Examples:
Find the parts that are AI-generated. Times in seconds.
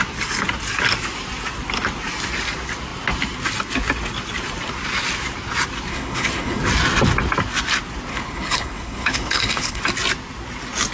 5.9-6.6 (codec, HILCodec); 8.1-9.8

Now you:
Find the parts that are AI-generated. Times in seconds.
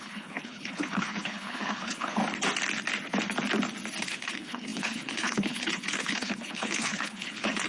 0.0-2.2 (codec, HILCodec); 4.0-7.7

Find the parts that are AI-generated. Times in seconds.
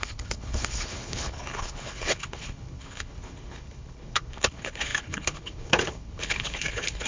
0.0-7.1 (codec, HILCodec)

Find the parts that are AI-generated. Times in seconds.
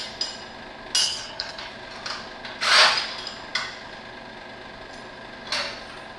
1.0-1.7 (codec, HILCodec)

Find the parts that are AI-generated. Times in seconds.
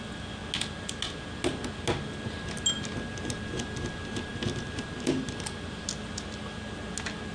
none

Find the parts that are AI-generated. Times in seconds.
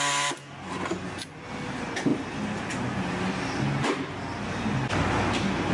none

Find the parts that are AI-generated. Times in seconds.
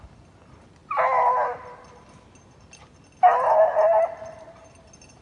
none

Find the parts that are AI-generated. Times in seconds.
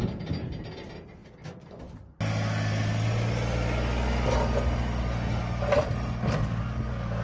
none